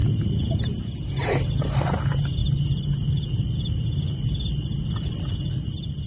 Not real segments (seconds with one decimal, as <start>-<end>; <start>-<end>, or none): none